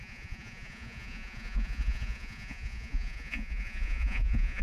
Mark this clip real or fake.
fake